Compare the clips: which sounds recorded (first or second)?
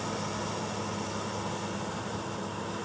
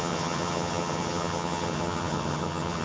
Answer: first